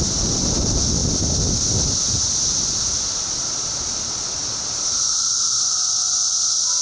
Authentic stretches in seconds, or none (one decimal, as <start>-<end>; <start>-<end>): 0.0-1.0; 2.1-2.9; 3.9-6.8